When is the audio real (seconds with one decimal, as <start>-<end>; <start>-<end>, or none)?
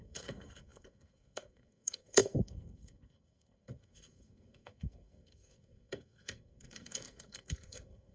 none